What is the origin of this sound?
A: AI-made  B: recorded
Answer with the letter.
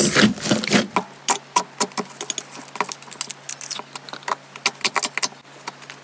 B